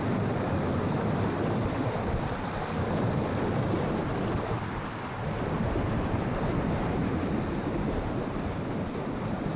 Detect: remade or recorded recorded